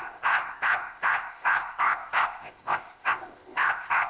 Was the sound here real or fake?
fake